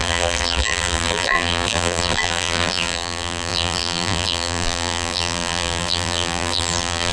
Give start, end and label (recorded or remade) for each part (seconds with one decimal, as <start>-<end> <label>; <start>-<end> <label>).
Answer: 0.0-7.1 remade